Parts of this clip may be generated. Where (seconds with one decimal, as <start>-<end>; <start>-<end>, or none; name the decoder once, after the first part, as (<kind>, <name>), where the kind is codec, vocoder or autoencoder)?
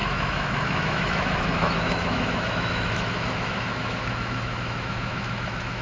0.0-5.8 (autoencoder, DAC-VAE)